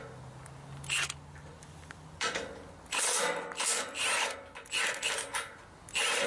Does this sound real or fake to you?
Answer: real